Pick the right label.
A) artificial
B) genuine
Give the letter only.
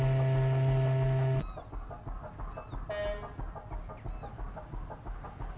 B